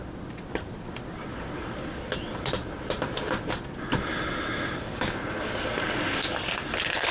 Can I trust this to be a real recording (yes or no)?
yes